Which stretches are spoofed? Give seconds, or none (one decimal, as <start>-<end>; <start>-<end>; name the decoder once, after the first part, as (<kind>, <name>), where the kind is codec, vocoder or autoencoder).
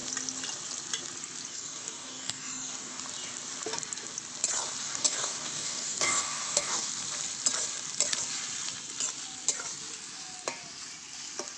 1.5-3.0 (codec, DAC); 4.8-6.9